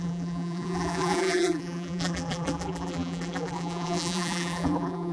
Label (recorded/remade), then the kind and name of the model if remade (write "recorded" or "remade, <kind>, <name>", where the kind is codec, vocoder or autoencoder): remade, vocoder, BigVGAN v2